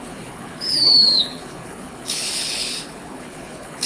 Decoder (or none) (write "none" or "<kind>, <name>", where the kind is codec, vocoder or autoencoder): codec, HILCodec